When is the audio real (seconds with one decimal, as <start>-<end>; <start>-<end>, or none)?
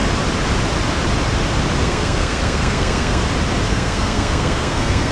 0.0-1.8; 3.2-3.7